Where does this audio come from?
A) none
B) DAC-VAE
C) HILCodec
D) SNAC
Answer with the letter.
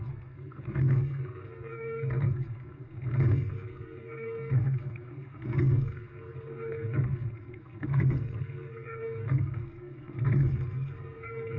D